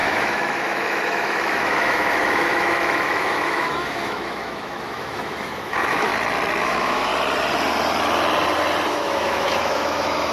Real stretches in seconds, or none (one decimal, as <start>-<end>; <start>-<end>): 6.1-6.6; 7.1-8.9